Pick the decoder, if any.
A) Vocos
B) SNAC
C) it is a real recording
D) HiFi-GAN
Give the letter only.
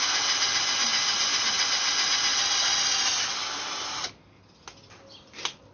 C